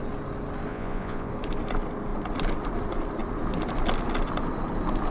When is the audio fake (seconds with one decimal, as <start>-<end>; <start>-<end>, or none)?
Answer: 0.7-1.3

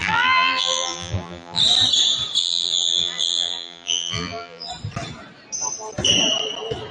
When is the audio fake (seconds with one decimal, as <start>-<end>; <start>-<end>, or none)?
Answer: 0.0-1.6; 2.4-4.7

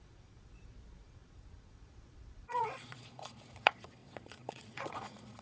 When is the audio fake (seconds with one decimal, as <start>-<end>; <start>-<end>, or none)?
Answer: 0.0-5.4

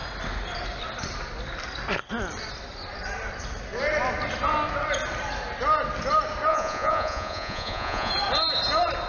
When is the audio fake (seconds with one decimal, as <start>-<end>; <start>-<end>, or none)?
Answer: 6.5-8.1